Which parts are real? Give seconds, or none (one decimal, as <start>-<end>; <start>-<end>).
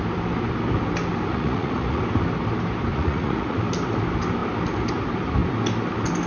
0.0-1.3; 2.0-2.9; 3.6-6.3